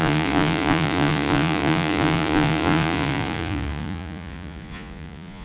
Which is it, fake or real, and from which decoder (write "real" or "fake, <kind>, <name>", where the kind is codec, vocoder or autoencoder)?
fake, vocoder, Vocos